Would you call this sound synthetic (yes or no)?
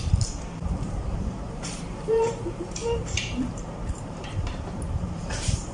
yes